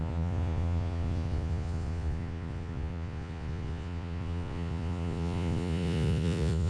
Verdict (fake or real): fake